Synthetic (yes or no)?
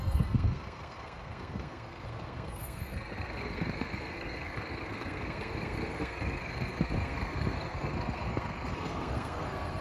yes